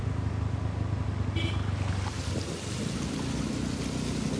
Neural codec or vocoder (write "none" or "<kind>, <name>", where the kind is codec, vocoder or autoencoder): none